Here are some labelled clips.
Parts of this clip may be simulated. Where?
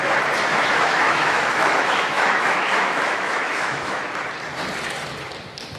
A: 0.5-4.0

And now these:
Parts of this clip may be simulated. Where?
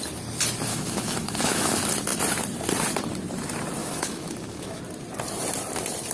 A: 0.7-1.7; 3.8-4.8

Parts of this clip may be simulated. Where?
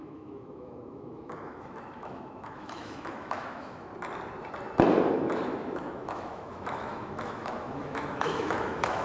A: 0.0-3.9; 5.1-9.0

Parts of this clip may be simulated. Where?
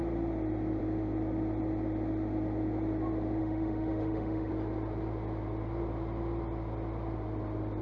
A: 3.4-4.5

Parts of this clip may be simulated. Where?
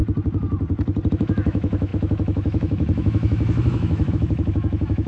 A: 1.1-5.1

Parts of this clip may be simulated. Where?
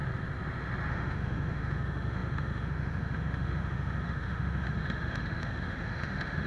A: 0.9-6.5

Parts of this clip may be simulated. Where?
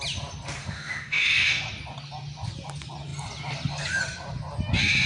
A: 0.6-1.6